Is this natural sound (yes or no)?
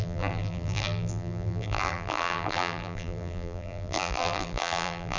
no